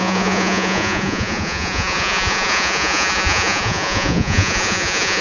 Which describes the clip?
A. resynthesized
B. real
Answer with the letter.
A